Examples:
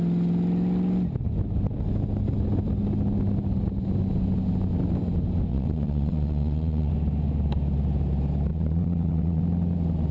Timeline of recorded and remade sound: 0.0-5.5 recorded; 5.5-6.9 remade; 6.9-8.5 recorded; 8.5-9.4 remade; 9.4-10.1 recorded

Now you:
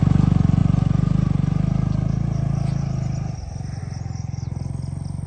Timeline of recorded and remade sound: 0.0-5.3 recorded

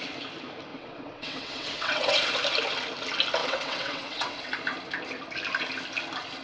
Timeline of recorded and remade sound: 0.0-0.7 recorded; 0.7-2.3 remade; 2.3-3.4 recorded; 3.4-4.5 remade; 4.5-6.4 recorded